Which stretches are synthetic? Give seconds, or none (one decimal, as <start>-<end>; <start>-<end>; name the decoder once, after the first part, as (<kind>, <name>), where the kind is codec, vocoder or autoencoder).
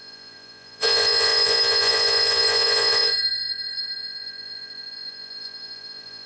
0.0-6.3 (vocoder, Vocos)